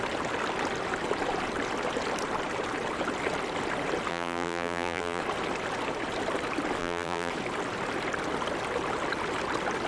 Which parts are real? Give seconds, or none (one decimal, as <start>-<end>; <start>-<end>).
0.0-4.1; 5.2-6.8; 7.3-9.9